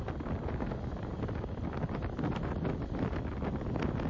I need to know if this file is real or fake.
real